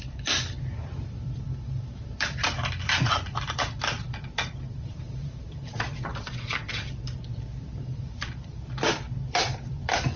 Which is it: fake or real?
fake